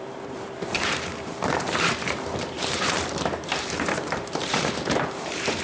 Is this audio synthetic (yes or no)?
yes